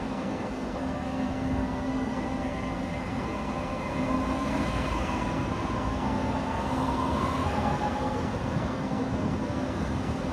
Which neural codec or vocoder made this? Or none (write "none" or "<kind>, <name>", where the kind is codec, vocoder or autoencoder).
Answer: codec, SNAC